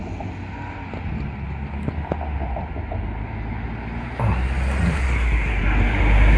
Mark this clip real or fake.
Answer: real